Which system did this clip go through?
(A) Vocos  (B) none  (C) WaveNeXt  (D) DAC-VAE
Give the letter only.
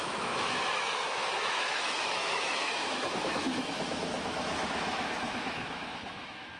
D